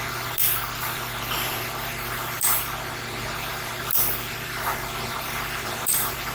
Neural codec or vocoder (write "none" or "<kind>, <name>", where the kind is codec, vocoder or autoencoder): vocoder, BigVGAN v2